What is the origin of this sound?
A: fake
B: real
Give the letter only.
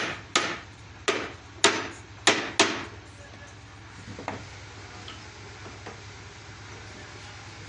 B